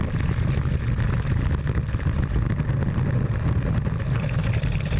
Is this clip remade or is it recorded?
recorded